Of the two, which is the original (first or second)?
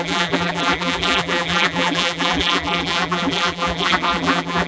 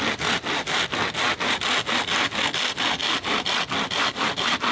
second